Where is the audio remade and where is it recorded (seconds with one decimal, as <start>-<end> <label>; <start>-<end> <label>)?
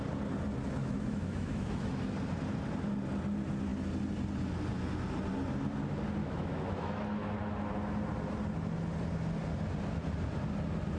0.0-0.8 recorded; 0.8-1.9 remade; 1.9-6.2 recorded; 6.2-7.0 remade; 7.0-11.0 recorded